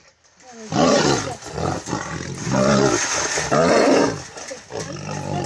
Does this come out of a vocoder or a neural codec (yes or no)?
no